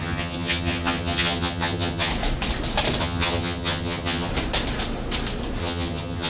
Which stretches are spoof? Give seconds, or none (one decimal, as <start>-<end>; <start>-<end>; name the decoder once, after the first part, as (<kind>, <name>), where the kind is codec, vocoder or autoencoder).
0.0-2.1 (vocoder, HiFi-GAN); 3.0-4.3; 5.6-6.3